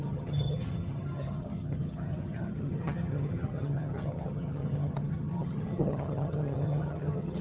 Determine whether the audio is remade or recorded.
remade